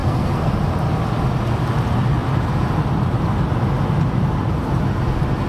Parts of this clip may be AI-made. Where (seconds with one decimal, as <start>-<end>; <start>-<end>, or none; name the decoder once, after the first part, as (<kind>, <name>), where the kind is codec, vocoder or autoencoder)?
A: 0.0-0.5 (codec, SNAC)